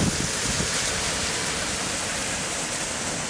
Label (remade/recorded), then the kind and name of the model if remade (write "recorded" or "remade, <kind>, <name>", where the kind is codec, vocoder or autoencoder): recorded